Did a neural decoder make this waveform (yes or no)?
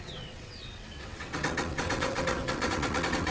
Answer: yes